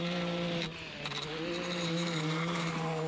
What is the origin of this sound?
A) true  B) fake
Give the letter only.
A